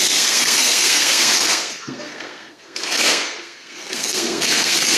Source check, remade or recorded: remade